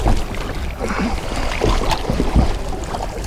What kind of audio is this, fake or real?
real